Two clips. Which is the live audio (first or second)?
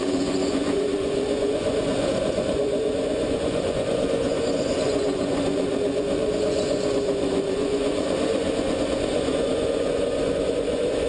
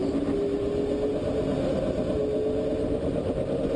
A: second